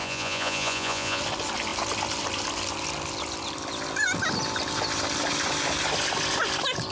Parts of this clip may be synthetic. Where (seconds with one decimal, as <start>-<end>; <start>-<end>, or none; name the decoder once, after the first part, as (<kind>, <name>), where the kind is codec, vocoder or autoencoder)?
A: 0.0-1.2 (vocoder, Vocos)